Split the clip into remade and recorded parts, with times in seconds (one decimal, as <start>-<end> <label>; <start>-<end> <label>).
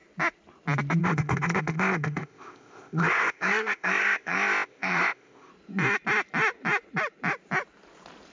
0.0-1.0 recorded; 1.0-5.5 remade; 5.5-8.3 recorded